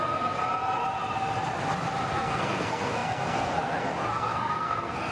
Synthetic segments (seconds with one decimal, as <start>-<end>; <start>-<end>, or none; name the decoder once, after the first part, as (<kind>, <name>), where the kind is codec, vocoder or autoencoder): 0.0-0.4 (codec, SNAC); 2.1-5.1

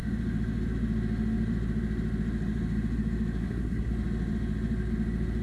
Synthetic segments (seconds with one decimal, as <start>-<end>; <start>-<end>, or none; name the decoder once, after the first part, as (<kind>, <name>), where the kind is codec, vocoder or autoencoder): 3.4-3.9 (codec, SNAC)

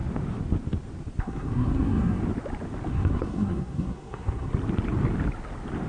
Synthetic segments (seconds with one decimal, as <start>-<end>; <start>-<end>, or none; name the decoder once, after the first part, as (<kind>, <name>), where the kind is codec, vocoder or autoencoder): 1.2-2.2 (codec, SNAC); 2.9-4.5

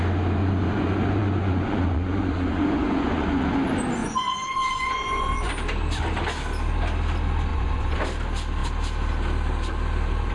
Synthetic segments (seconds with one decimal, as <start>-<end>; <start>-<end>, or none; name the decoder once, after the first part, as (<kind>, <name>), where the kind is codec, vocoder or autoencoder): 0.4-3.6 (vocoder, Vocos); 4.0-5.5; 7.5-8.0

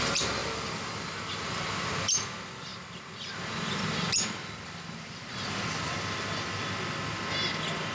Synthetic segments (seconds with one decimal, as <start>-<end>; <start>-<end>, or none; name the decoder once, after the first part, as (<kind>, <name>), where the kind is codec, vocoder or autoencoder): none

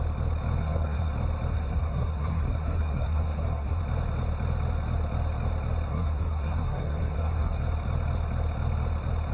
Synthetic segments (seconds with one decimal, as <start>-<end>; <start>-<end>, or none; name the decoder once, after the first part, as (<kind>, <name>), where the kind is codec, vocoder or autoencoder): 0.6-1.1 (codec, SNAC); 1.5-3.8; 5.9-7.6

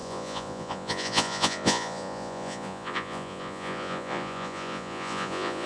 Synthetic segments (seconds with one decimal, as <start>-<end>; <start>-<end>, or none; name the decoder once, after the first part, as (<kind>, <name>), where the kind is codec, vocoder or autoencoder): 0.0-5.7 (vocoder, Vocos)

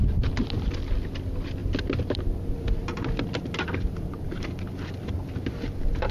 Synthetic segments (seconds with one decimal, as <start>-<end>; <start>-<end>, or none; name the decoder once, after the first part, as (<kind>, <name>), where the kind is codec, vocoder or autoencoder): 1.6-4.8 (vocoder, BigVGAN v2)